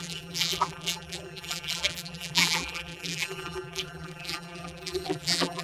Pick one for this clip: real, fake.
fake